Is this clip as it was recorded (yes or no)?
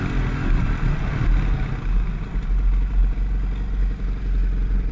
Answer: yes